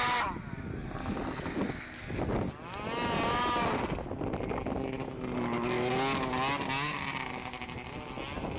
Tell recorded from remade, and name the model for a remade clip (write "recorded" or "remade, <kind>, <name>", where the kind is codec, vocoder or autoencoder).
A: recorded